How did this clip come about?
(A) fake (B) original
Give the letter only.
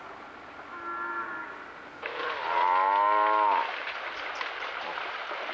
B